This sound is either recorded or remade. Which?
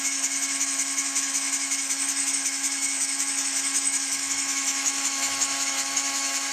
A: remade